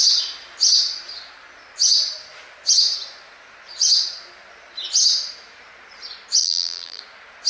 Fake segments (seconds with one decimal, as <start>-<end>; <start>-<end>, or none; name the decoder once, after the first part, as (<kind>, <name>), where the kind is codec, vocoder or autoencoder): 6.4-7.0 (vocoder, BigVGAN v2)